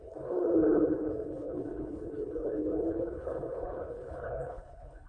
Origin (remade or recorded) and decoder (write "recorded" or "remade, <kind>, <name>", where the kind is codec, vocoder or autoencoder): remade, codec, HILCodec